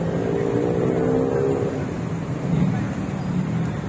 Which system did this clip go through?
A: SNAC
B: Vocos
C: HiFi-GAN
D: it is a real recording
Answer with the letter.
D